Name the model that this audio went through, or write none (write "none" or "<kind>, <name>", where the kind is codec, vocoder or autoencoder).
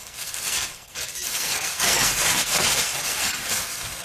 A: codec, SNAC